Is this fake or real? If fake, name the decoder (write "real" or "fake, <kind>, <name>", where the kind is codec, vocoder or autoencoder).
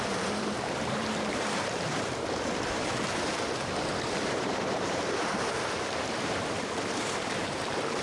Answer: fake, vocoder, BigVGAN v2